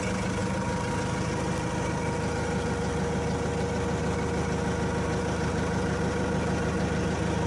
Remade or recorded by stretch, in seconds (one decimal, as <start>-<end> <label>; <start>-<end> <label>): 0.0-0.4 recorded; 0.4-0.9 remade; 0.9-7.5 recorded